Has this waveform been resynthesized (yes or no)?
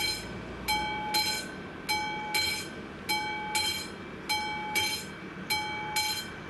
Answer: no